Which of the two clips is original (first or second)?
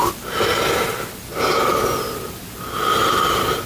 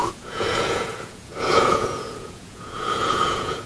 first